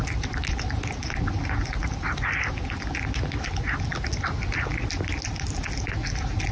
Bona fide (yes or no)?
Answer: yes